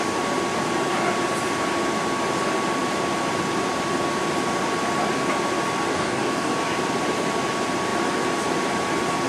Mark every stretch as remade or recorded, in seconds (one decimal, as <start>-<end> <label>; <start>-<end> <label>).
0.0-5.9 recorded; 5.9-6.5 remade; 6.5-9.3 recorded

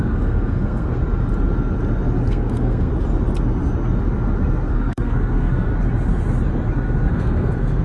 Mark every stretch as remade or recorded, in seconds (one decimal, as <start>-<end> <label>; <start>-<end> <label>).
0.0-1.0 remade; 1.0-2.3 recorded; 2.3-2.9 remade; 2.9-4.7 recorded; 4.7-5.7 remade; 5.7-7.1 recorded; 7.1-7.8 remade

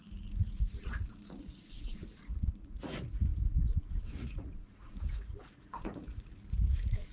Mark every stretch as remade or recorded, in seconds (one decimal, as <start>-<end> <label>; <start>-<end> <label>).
0.0-3.3 remade; 3.3-3.9 recorded; 3.9-7.1 remade